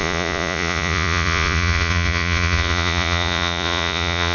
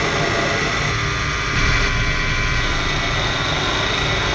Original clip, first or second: second